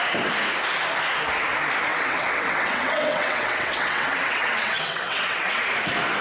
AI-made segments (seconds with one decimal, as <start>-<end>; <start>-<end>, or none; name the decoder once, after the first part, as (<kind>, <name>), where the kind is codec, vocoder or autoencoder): 1.9-5.6 (vocoder, WaveNeXt)